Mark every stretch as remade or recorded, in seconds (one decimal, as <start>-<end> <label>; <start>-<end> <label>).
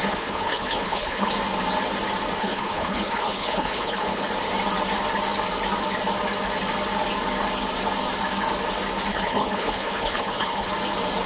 0.0-1.3 remade; 1.3-2.4 recorded; 2.4-4.3 remade; 4.3-9.1 recorded; 9.1-10.7 remade; 10.7-11.3 recorded